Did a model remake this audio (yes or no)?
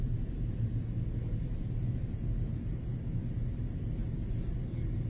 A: no